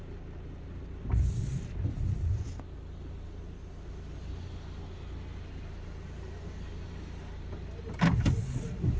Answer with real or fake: real